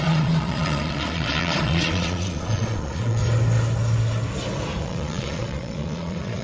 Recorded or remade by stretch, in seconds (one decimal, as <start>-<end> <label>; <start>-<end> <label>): 0.0-3.2 remade; 3.2-4.8 recorded; 4.8-6.4 remade